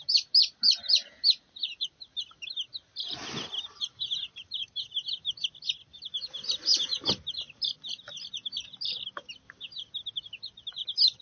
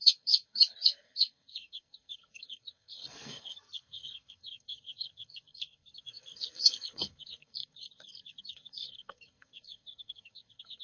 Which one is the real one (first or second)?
first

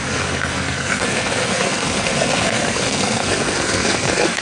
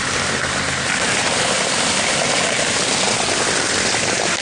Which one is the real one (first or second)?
second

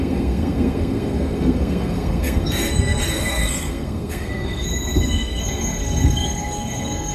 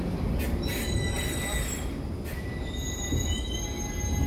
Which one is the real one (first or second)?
second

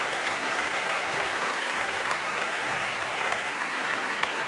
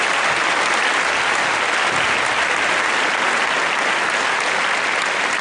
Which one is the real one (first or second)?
second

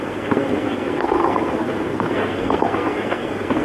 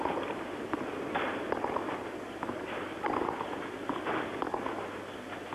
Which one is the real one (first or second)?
second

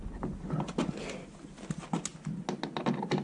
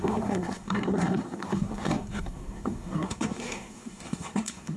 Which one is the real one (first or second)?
first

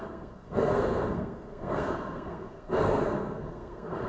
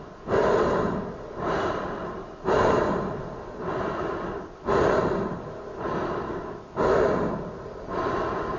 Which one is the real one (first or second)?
second